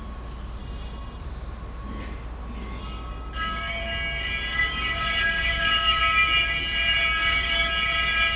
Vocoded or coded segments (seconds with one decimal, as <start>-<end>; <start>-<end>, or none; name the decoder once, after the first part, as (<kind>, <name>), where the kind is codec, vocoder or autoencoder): 0.6-1.2 (codec, DAC); 2.8-3.8; 4.5-6.0; 7.2-7.7

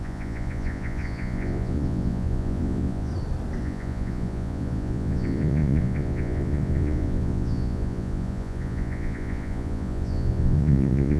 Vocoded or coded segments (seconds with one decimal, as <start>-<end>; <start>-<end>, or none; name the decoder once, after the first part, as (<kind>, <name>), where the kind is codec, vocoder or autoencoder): 0.0-3.1 (vocoder, Vocos); 3.6-11.2

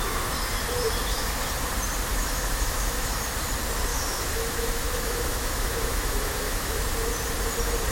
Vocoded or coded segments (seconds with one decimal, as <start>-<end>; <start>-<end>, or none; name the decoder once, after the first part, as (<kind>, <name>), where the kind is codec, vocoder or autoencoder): 1.0-1.5 (autoencoder, DAC-VAE); 2.1-3.2; 3.9-6.8

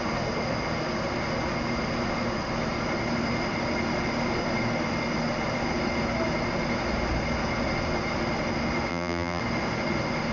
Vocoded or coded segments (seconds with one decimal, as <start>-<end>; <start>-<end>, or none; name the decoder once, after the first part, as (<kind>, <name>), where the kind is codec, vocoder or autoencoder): 8.9-9.4 (vocoder, BigVGAN v2)

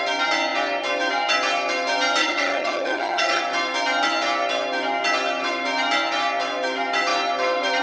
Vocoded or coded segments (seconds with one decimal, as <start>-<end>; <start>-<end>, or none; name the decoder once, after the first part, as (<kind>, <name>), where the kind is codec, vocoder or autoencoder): 2.2-3.4 (vocoder, HiFi-GAN)

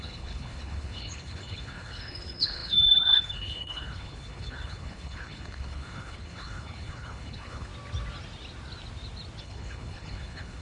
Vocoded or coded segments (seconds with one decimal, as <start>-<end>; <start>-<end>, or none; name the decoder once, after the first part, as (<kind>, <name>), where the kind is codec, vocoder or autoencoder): 0.0-7.7 (codec, HILCodec); 9.4-10.6

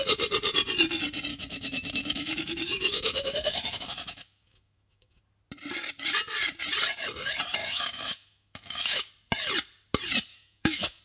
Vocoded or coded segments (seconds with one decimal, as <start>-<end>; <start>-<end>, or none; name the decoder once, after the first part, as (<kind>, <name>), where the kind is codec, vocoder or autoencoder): 1.3-5.2 (autoencoder, DAC-VAE); 7.6-9.1; 10.3-11.0

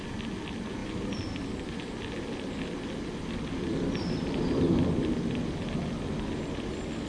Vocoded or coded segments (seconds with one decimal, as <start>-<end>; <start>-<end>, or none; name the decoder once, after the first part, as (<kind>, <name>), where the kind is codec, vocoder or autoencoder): none